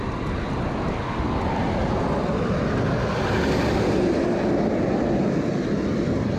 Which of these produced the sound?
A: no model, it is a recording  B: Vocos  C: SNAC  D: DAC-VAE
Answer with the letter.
A